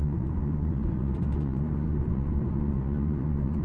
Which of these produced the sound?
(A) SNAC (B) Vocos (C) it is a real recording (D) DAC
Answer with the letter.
B